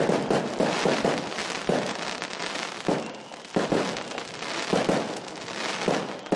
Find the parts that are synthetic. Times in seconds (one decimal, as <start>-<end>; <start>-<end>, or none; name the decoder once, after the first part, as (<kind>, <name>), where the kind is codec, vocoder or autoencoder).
none